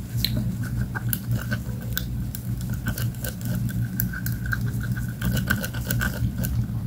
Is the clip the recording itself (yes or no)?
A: yes